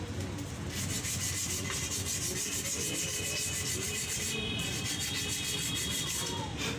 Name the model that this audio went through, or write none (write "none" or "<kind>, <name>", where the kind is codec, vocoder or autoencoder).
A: none